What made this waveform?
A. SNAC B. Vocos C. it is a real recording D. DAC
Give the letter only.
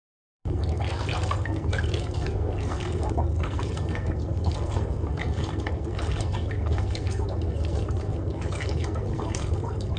A